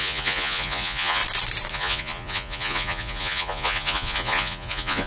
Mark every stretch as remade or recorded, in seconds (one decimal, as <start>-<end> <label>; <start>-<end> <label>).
0.0-1.2 remade; 1.2-1.7 recorded; 1.7-5.1 remade